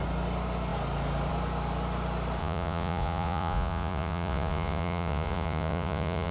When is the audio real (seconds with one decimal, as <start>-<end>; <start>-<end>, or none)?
0.0-2.4